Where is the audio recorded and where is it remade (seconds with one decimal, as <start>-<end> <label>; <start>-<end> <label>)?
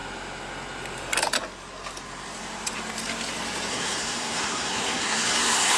0.0-3.7 recorded; 3.7-5.8 remade